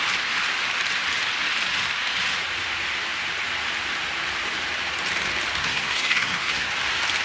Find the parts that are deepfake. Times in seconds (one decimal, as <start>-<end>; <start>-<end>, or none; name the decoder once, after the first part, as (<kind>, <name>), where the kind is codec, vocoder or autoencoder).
5.6-6.7 (codec, SNAC)